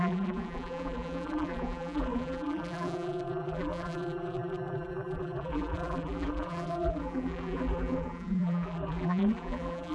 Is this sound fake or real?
fake